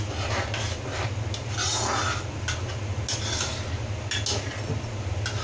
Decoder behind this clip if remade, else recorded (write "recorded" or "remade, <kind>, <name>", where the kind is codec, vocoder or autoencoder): recorded